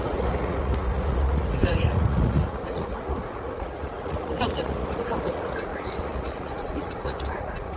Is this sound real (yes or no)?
no